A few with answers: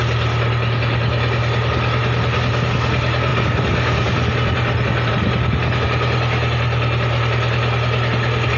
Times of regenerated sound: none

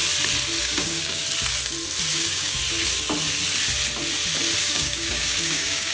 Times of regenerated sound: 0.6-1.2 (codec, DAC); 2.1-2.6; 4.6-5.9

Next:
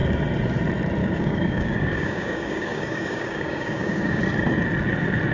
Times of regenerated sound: 1.0-4.2 (codec, DAC)

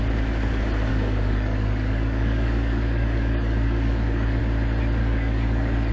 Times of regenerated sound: 0.9-4.4 (codec, DAC); 5.0-5.9

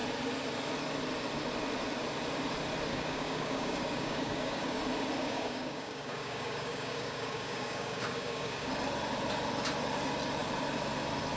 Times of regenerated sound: 2.9-4.8 (codec, DAC); 5.2-8.7

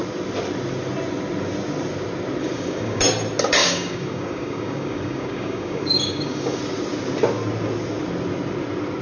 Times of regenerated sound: 2.4-3.0 (codec, DAC); 3.6-6.6